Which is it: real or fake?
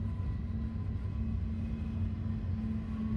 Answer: real